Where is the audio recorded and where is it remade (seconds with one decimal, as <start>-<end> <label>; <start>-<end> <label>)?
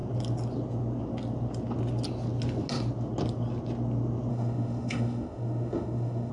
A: 0.0-4.3 recorded; 4.3-6.3 remade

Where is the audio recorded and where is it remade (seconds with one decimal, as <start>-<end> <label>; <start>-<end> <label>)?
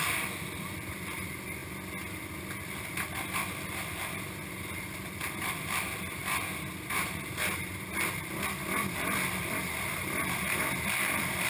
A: 0.0-1.6 remade; 1.6-3.6 recorded; 3.6-6.2 remade; 6.2-7.5 recorded; 7.5-11.5 remade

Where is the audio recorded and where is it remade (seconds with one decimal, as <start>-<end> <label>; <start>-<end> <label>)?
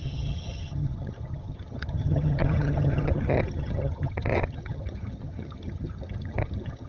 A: 0.0-6.9 remade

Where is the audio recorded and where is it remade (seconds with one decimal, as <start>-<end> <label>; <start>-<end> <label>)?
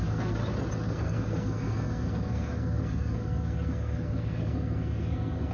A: 0.0-0.4 remade; 0.4-0.9 recorded; 0.9-5.5 remade